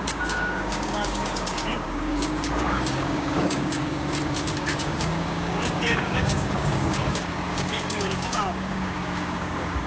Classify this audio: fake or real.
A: fake